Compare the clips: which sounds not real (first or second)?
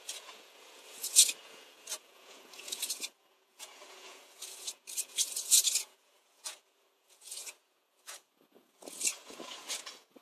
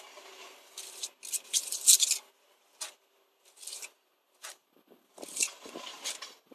first